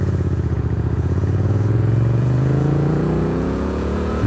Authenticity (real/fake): fake